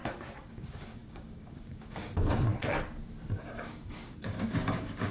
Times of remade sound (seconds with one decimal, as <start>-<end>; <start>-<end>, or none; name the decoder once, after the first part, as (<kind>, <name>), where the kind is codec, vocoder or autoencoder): 0.5-2.5 (codec, DAC); 3.4-5.1